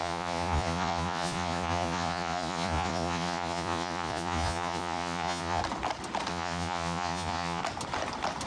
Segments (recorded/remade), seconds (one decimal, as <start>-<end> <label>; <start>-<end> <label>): 0.0-5.6 remade; 5.6-6.3 recorded; 6.3-7.6 remade; 7.6-8.5 recorded